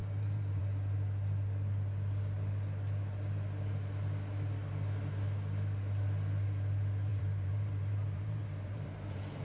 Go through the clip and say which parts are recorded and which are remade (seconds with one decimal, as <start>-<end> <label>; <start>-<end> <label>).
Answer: 0.0-0.6 remade; 0.6-7.1 recorded; 7.1-9.4 remade